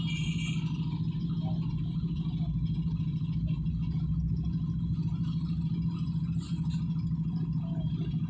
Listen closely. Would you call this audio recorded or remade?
recorded